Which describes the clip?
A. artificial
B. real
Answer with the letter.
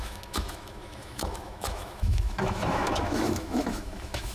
A